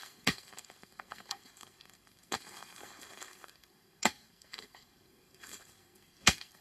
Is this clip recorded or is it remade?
remade